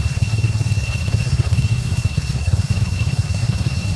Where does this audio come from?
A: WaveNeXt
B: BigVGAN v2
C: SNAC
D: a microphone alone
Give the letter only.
C